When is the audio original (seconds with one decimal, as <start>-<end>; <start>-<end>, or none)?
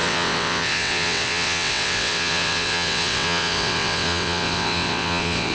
none